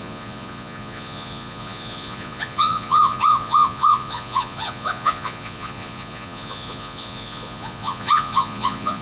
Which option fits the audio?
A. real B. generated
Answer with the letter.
B